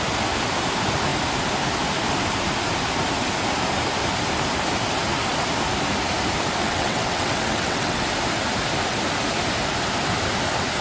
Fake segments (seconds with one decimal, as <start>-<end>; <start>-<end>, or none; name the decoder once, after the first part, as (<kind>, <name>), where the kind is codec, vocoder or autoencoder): 6.7-8.0 (vocoder, WaveNeXt)